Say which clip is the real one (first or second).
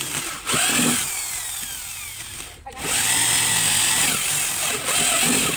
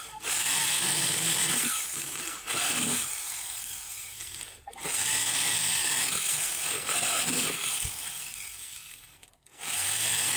first